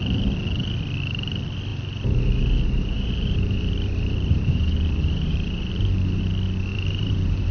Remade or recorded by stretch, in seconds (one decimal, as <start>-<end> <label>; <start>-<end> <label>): 0.0-1.7 recorded; 1.7-6.2 remade; 6.2-6.7 recorded; 6.7-7.5 remade